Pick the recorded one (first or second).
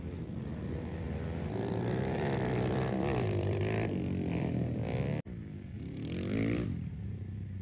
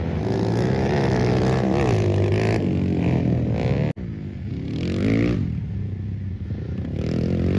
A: second